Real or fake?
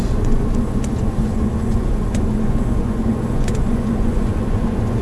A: fake